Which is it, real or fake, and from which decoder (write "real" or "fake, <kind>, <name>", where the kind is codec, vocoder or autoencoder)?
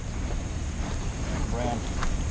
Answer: real